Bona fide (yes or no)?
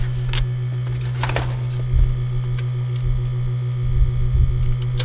yes